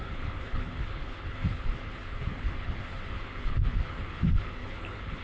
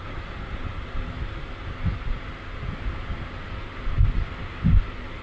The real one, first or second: second